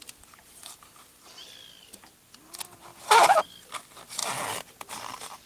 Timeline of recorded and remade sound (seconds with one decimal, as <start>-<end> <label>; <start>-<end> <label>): 0.0-2.9 remade; 2.9-3.4 recorded; 3.4-4.2 remade; 4.2-5.5 recorded